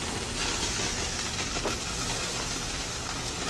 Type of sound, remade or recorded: recorded